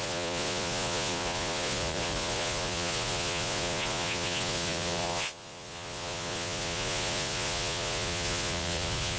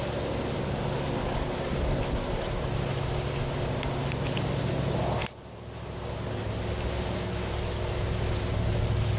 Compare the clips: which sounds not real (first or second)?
first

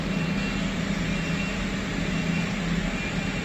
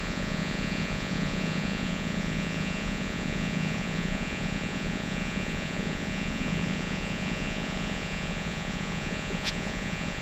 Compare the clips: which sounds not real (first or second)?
second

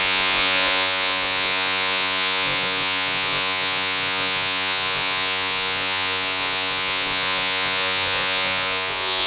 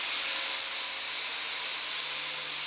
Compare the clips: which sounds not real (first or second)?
first